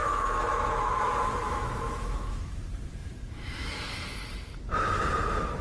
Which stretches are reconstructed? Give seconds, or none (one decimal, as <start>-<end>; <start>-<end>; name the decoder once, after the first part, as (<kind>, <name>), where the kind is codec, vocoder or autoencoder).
0.0-2.6 (autoencoder, DAC-VAE); 3.0-3.7

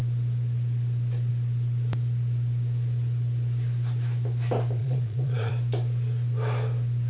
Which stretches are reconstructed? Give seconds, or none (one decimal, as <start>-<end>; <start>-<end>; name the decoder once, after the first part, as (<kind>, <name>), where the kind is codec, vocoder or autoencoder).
4.8-5.5 (vocoder, Vocos)